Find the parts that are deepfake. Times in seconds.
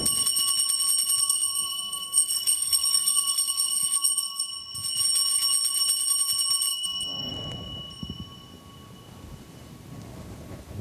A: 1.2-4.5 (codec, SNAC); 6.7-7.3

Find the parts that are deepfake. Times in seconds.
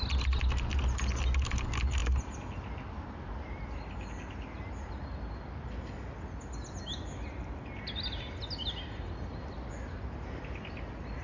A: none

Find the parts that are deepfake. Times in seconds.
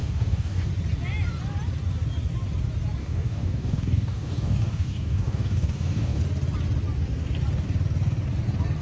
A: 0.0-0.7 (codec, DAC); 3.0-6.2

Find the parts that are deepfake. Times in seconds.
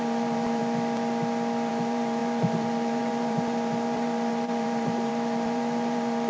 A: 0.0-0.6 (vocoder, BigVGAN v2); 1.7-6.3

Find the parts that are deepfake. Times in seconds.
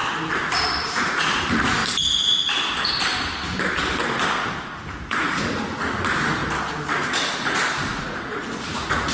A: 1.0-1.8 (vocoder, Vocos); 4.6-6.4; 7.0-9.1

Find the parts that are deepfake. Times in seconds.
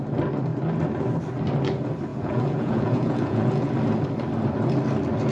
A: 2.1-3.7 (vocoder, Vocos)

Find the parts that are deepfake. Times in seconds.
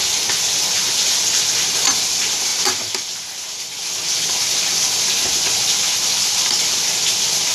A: none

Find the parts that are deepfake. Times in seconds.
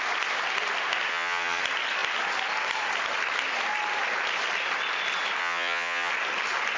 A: 1.1-1.6 (vocoder, HiFi-GAN); 5.4-6.1